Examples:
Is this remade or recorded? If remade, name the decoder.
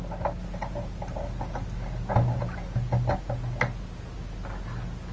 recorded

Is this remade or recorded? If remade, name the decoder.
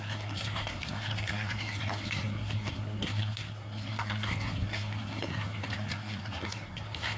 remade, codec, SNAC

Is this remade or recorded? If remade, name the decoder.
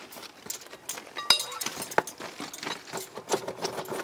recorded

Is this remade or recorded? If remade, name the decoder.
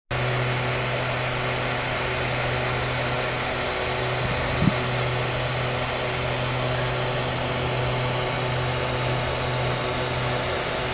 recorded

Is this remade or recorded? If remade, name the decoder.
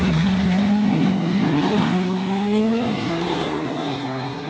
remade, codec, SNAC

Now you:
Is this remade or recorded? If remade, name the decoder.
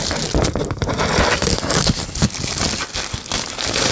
recorded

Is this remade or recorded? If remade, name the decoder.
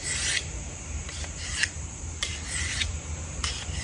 remade, vocoder, BigVGAN v2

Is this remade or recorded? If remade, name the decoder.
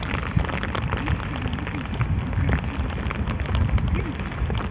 recorded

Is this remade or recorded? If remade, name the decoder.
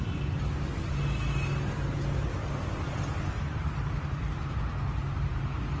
recorded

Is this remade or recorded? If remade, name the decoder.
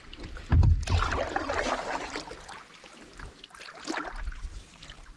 recorded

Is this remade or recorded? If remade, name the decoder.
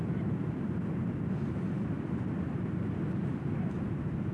recorded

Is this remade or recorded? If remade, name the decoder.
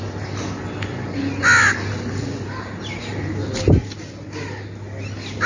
recorded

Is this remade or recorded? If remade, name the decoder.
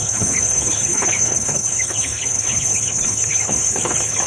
remade, codec, HILCodec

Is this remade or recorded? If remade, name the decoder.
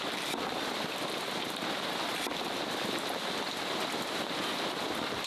recorded